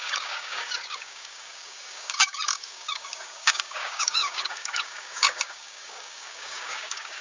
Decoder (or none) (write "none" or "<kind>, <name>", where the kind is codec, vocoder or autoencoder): codec, DAC